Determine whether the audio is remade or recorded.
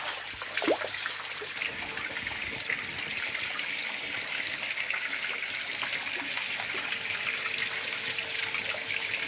recorded